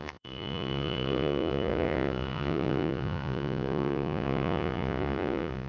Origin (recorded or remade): remade